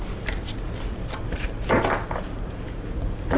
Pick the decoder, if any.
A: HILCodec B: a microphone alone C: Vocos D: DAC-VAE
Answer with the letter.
B